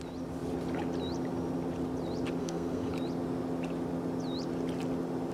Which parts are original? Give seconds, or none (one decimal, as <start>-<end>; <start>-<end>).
0.0-2.4; 2.9-5.3